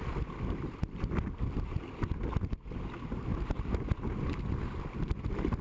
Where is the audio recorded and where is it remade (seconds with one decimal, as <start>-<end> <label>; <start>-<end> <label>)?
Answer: 0.0-5.6 recorded